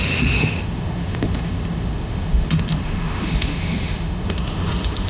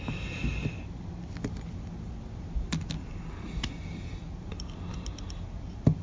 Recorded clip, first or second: second